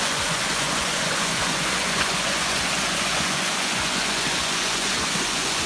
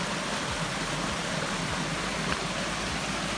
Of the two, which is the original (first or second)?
second